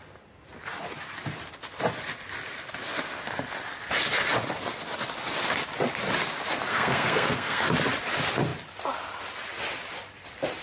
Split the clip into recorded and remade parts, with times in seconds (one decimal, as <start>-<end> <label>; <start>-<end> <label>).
0.0-6.7 recorded; 6.7-7.7 remade; 7.7-10.6 recorded